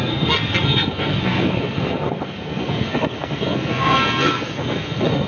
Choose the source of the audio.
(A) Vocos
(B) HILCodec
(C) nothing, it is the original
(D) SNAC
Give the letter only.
D